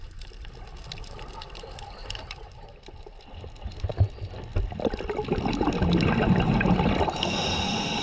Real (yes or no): yes